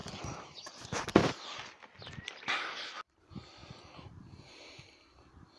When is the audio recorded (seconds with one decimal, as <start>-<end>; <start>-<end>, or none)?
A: 1.2-3.2; 3.6-5.6